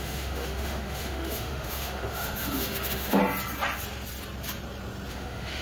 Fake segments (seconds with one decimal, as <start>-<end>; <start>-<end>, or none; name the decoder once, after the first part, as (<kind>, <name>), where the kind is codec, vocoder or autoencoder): 0.0-3.2 (autoencoder, DAC-VAE); 5.1-5.6